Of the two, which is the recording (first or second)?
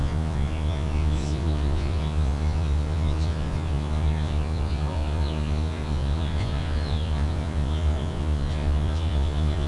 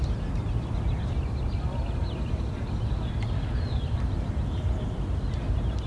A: second